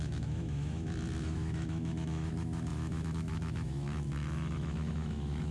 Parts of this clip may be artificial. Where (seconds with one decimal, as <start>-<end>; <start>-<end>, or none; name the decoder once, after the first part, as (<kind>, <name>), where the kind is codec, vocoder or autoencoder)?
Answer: 0.0-5.5 (autoencoder, DAC-VAE)